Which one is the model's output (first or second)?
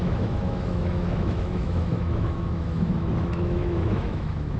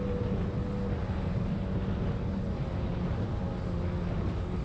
first